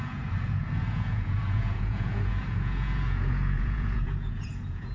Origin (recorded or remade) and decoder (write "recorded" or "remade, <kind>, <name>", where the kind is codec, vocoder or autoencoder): remade, vocoder, Vocos